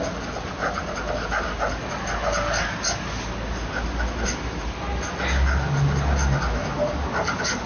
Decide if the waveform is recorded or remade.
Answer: recorded